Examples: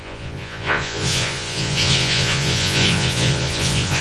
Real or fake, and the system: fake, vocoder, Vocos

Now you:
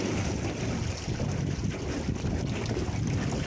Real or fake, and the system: real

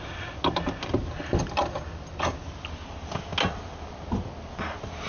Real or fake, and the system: real